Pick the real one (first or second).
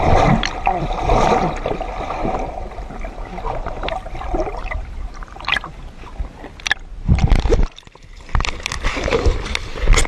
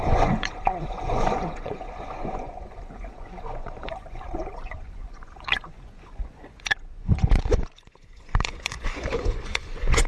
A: first